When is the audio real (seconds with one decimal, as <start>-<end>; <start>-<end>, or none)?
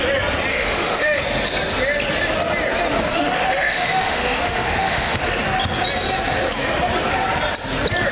0.0-0.5; 1.2-3.1; 5.2-8.1